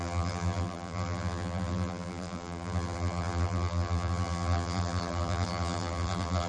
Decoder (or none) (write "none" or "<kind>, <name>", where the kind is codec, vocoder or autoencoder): vocoder, BigVGAN v2